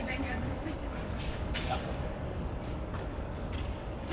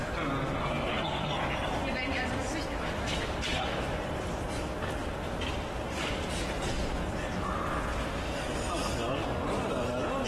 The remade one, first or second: first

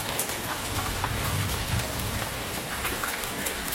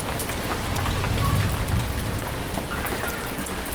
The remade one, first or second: first